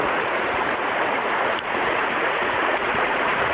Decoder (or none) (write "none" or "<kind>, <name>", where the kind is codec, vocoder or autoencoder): vocoder, Vocos